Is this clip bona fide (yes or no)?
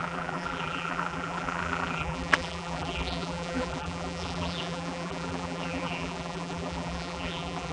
no